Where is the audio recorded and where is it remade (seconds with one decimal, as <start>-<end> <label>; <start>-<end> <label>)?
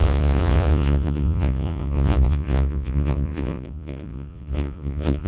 0.0-5.3 remade